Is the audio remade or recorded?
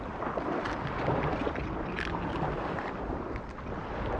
recorded